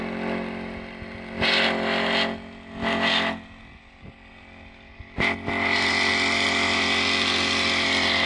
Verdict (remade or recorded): recorded